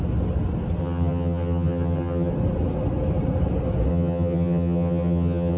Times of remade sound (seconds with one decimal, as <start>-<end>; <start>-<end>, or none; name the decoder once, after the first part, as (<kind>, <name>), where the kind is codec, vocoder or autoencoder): 0.8-2.3 (vocoder, HiFi-GAN); 3.9-5.6